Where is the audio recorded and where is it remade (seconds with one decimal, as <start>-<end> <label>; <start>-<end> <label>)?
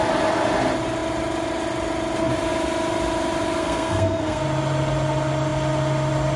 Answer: 0.0-3.6 recorded; 3.6-4.4 remade; 4.4-6.4 recorded